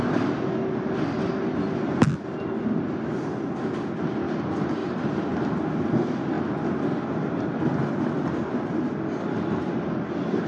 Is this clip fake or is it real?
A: real